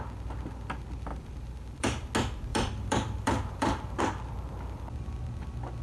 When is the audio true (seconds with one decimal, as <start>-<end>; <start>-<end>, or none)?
0.0-1.1; 2.1-2.5; 4.0-5.8